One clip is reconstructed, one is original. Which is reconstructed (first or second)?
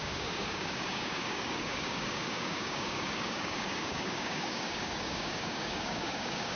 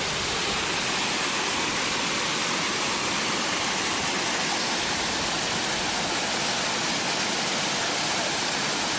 first